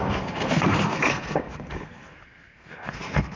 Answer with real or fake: fake